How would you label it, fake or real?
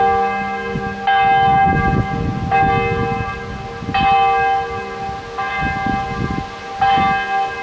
real